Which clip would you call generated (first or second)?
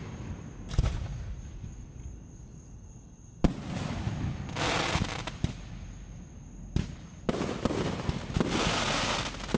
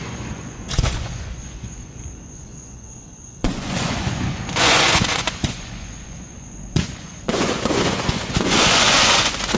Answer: second